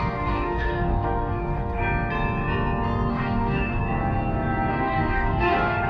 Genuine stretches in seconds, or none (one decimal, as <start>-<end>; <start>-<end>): 1.8-3.1; 3.8-4.7